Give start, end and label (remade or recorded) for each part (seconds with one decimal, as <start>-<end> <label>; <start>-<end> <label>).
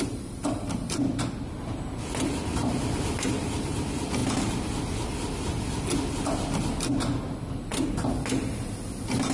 0.0-9.3 recorded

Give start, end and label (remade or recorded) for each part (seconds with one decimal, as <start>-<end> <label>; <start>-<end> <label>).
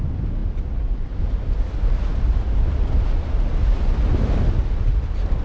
0.0-5.4 recorded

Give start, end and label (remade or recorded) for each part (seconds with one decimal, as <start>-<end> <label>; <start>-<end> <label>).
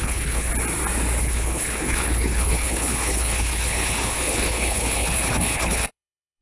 0.0-0.5 remade; 0.5-1.2 recorded; 1.2-6.4 remade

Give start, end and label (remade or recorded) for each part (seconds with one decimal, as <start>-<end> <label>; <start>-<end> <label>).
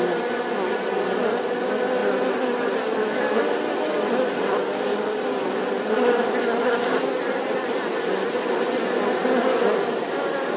0.0-10.6 recorded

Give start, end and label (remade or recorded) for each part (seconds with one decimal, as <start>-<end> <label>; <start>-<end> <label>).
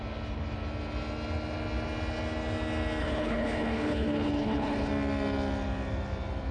0.0-3.0 recorded; 3.0-4.9 remade; 4.9-6.5 recorded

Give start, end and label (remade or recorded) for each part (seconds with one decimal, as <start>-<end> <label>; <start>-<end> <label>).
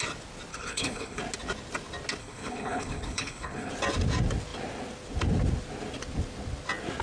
0.0-0.5 recorded; 0.5-1.2 remade; 1.2-2.2 recorded; 2.2-3.7 remade; 3.7-7.0 recorded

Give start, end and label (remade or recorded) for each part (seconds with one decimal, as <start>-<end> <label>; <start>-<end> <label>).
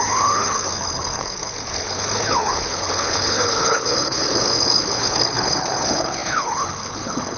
0.0-7.4 remade